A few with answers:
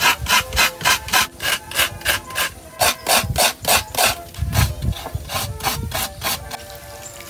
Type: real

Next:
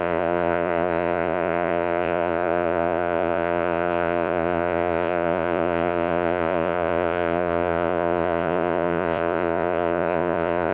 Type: fake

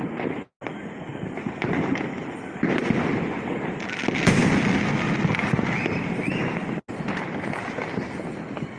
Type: real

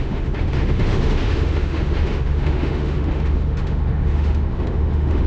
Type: fake